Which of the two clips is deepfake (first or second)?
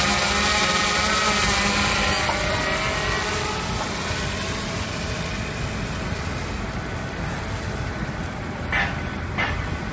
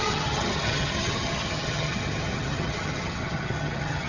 second